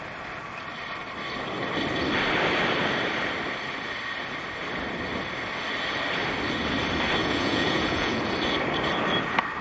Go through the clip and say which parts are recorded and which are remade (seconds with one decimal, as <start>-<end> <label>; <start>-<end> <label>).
0.0-7.2 recorded; 7.2-8.2 remade; 8.2-9.6 recorded